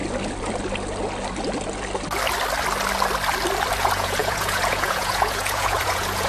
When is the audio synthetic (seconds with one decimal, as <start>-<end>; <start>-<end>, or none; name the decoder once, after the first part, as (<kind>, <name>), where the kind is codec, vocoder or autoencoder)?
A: 3.8-6.3 (vocoder, Vocos)